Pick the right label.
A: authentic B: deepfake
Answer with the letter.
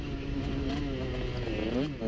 A